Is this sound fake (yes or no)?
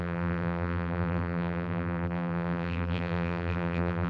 yes